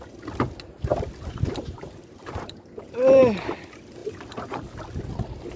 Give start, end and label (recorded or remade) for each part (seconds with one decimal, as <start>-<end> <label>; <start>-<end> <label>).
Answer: 0.0-0.9 recorded; 0.9-3.2 remade; 3.2-4.0 recorded; 4.0-4.7 remade; 4.7-5.6 recorded